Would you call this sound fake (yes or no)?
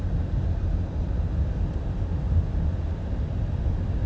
no